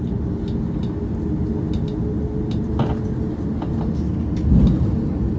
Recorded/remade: recorded